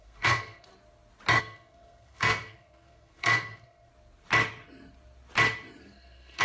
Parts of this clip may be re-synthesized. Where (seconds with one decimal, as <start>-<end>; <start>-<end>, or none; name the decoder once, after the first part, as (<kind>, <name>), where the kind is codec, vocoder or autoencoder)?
0.0-0.7 (codec, SNAC); 1.4-3.9; 5.8-6.4